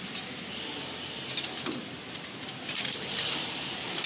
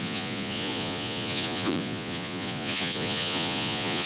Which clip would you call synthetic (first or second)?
second